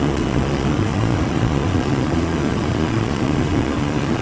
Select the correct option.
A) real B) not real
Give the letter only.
B